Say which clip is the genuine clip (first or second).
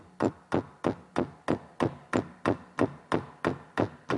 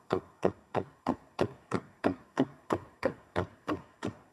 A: first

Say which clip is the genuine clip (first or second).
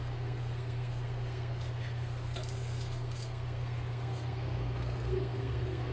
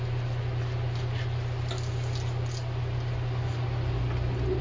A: second